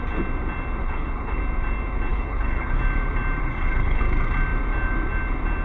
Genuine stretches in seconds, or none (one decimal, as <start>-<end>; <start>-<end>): 0.0-0.8; 1.4-2.1; 2.8-3.4; 4.0-5.6